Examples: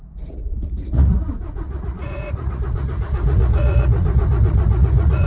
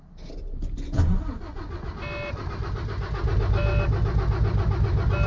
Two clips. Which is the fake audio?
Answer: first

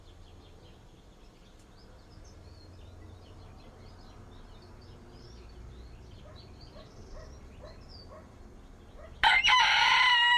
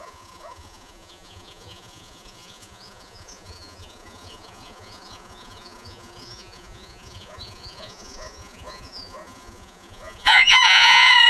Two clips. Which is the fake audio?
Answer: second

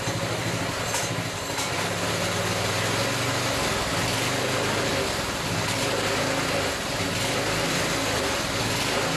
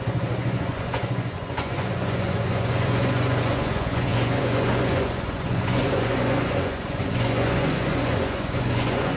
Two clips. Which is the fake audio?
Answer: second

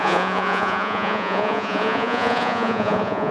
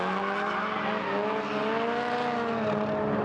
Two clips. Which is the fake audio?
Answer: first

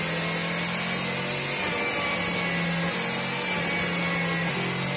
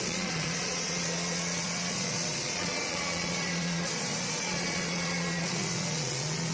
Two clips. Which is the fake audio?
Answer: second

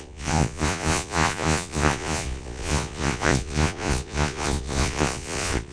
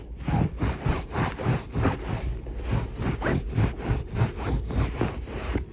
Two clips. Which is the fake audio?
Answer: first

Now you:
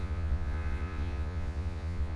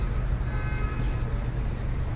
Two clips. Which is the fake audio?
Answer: first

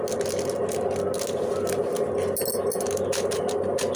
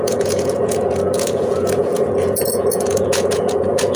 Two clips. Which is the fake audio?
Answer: second